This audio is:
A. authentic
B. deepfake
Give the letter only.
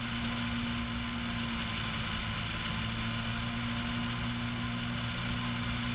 A